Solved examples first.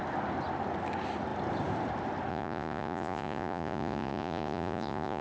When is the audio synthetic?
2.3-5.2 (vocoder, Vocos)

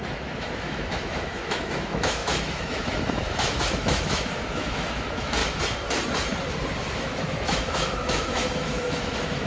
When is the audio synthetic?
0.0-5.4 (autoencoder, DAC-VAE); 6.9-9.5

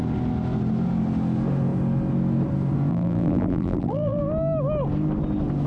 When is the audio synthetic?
2.9-4.2 (vocoder, BigVGAN v2)

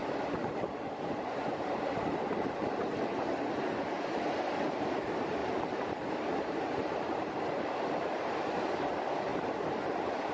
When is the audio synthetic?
0.0-3.1 (vocoder, BigVGAN v2); 3.7-9.3